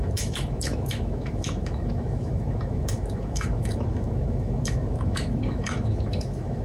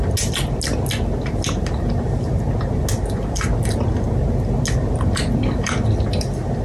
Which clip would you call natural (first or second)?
second